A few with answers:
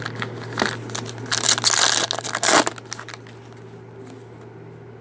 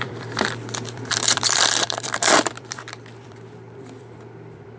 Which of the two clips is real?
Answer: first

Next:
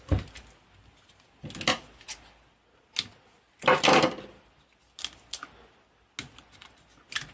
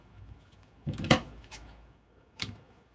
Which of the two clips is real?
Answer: first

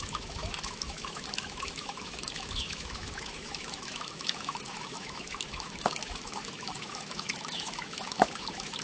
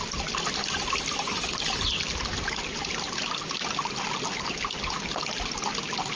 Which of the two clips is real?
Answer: second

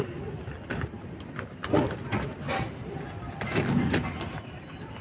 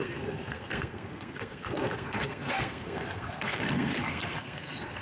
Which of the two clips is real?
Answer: first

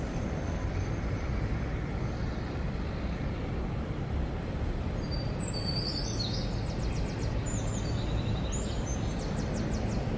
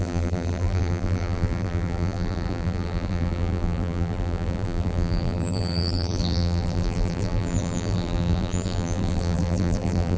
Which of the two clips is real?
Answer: first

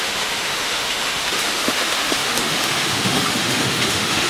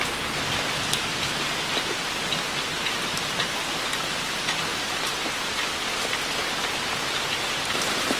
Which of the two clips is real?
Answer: second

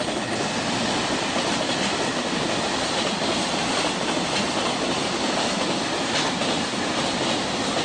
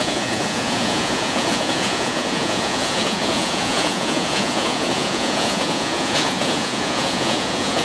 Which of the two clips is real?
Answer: first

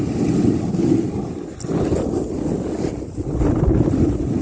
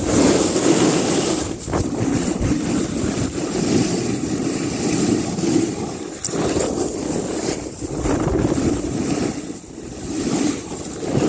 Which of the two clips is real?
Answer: first